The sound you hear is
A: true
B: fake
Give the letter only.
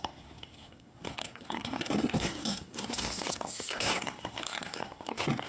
B